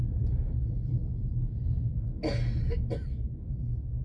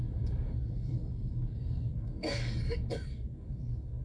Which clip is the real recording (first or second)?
first